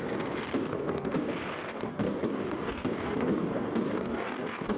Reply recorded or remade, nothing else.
remade